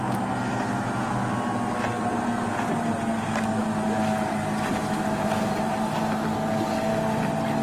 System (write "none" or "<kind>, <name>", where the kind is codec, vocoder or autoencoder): none